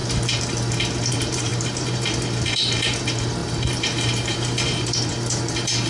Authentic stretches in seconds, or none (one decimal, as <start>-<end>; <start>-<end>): 0.0-1.1